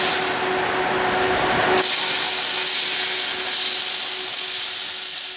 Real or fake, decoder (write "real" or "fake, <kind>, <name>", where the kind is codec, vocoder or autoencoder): real